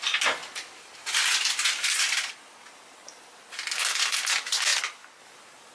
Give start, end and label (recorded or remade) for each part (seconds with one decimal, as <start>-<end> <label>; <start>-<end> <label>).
0.0-0.4 remade; 0.4-3.8 recorded; 3.8-5.7 remade